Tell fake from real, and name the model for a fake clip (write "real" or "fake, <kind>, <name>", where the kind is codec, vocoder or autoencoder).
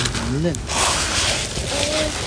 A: real